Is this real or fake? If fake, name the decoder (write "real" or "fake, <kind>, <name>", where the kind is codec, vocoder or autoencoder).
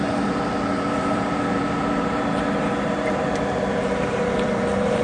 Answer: fake, vocoder, BigVGAN v2